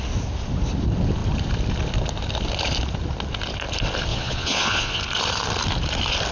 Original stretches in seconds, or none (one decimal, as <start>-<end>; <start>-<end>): 0.0-4.1; 5.0-6.3